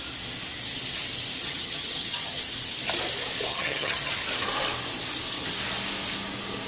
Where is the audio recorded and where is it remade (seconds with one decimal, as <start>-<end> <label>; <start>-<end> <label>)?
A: 0.0-1.4 recorded; 1.4-2.4 remade; 2.4-3.5 recorded; 3.5-4.1 remade; 4.1-6.7 recorded